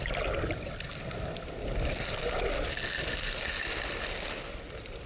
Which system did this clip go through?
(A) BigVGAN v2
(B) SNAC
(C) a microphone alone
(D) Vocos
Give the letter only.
C